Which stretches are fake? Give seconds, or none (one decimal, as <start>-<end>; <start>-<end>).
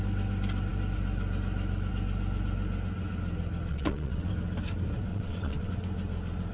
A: 3.7-4.3; 5.1-5.7